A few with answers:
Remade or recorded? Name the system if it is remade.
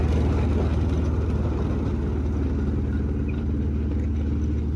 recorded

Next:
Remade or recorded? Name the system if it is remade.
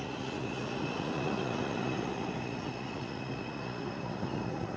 remade, vocoder, Vocos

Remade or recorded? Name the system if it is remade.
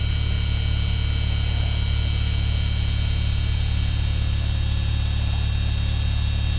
recorded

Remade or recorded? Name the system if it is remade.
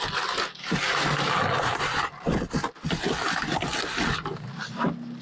recorded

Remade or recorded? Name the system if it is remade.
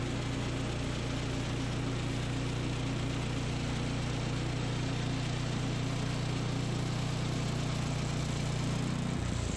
recorded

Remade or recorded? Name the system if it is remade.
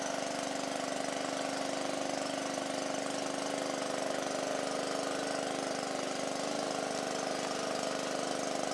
recorded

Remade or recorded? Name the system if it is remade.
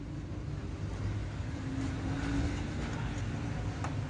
recorded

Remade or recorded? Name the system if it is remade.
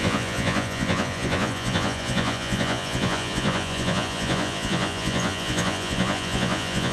remade, vocoder, Vocos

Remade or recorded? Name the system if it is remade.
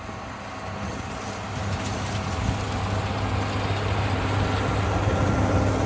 recorded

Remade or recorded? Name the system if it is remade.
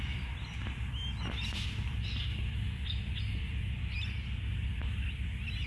recorded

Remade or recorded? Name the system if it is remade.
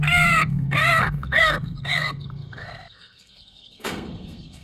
remade, codec, SNAC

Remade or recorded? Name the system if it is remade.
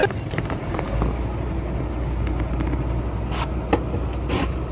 recorded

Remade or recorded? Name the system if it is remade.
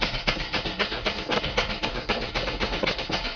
remade, codec, SNAC